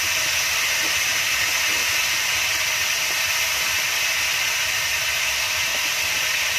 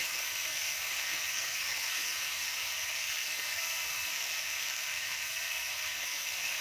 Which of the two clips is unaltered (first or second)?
first